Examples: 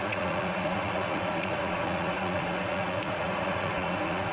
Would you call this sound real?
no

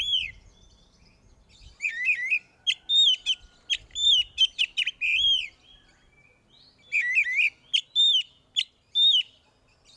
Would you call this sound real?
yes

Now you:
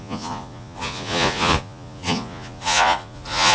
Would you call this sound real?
no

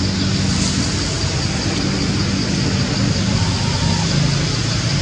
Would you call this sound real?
yes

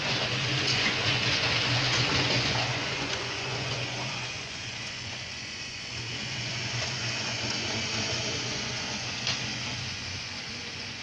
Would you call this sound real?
no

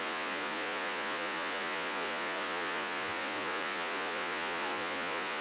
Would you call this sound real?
no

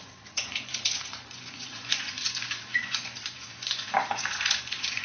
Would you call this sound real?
no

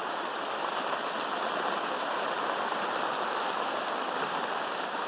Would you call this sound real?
yes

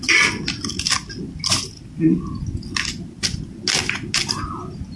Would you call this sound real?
yes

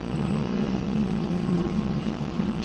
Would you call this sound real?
no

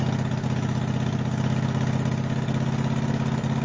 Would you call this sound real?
yes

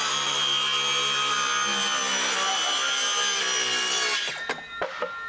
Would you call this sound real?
yes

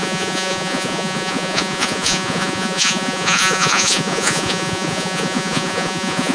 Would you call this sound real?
no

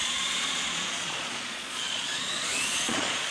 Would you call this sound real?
no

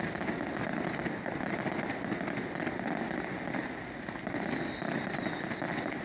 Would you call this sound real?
yes